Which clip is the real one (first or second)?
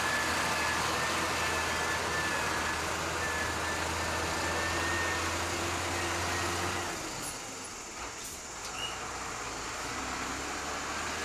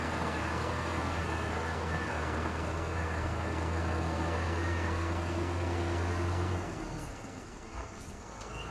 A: first